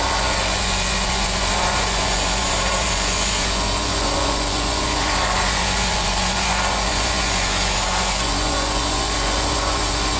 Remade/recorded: remade